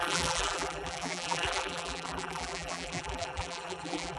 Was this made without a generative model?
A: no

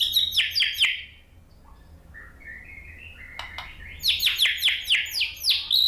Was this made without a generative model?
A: yes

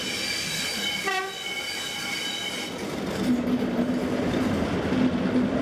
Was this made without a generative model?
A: yes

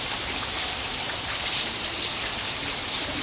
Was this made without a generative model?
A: no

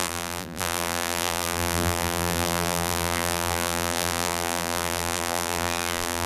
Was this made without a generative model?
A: no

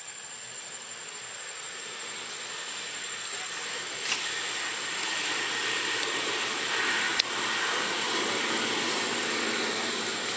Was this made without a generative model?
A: yes